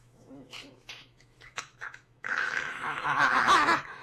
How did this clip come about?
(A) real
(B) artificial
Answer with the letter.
B